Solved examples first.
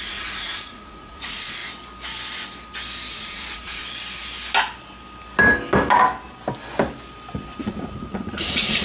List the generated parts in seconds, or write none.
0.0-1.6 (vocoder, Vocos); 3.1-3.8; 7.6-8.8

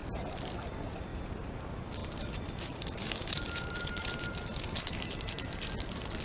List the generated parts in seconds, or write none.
1.1-1.6 (vocoder, BigVGAN v2); 2.0-5.7

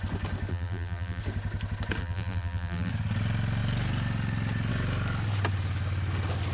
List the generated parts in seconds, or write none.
0.5-1.2 (vocoder, BigVGAN v2); 2.0-2.9

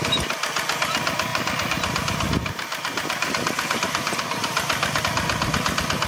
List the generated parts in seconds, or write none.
1.3-5.0 (vocoder, BigVGAN v2)

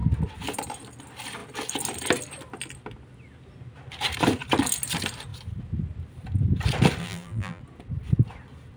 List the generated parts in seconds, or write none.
7.0-7.6 (vocoder, BigVGAN v2)